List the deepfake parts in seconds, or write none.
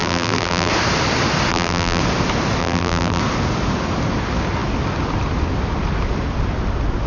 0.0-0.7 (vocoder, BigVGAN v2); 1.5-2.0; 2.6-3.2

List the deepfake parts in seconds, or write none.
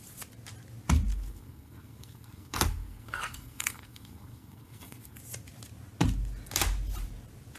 1.1-5.2 (codec, SNAC)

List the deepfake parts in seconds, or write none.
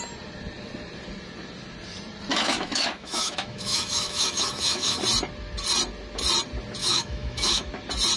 2.3-5.0 (autoencoder, DAC-VAE); 6.8-7.7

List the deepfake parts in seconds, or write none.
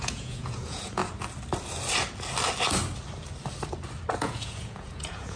0.0-1.0 (vocoder, Vocos); 4.2-5.4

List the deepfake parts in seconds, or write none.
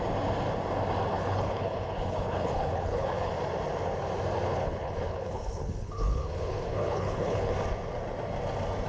1.1-3.3 (codec, HILCodec); 4.5-7.5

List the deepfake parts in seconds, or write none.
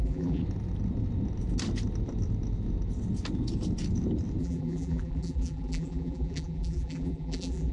0.0-0.4 (vocoder, BigVGAN v2); 4.4-7.7